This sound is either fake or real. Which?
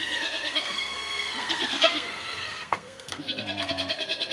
fake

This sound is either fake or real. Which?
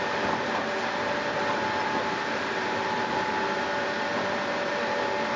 fake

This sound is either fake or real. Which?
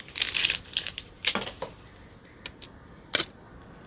fake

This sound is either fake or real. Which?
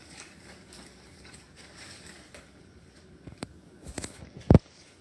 fake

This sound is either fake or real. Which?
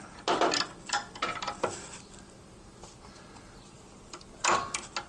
real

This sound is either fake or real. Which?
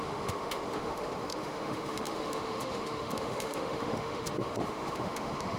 fake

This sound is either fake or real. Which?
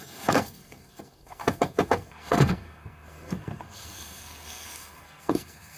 fake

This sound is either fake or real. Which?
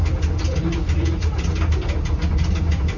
real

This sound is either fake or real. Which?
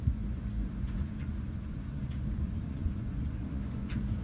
fake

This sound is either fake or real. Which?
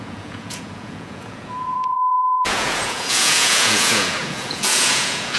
fake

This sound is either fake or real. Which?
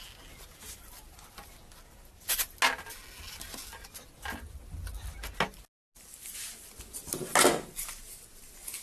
real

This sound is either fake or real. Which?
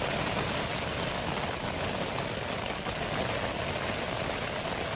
real